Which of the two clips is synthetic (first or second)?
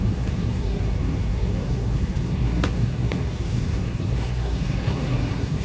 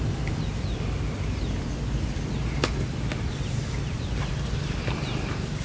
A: first